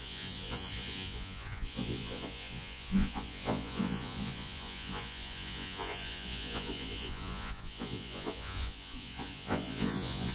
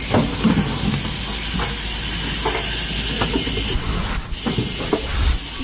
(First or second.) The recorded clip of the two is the second